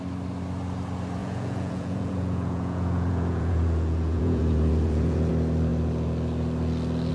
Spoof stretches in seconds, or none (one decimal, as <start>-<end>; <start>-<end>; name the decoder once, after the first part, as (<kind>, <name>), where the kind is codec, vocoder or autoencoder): 1.2-5.3 (vocoder, Vocos)